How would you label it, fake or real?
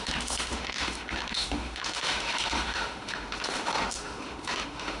fake